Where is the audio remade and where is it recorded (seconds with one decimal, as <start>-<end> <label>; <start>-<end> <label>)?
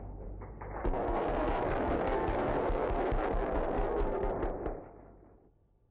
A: 0.0-0.8 recorded; 0.8-4.3 remade; 4.3-5.9 recorded